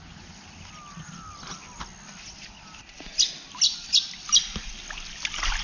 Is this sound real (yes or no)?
yes